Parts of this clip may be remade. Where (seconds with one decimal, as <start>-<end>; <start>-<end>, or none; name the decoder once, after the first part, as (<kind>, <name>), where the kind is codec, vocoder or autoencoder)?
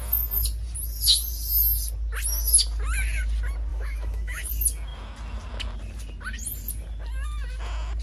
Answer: 3.7-4.5 (autoencoder, DAC-VAE)